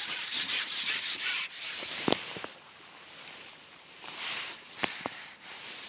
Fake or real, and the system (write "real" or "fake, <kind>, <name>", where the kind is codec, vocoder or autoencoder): fake, vocoder, BigVGAN v2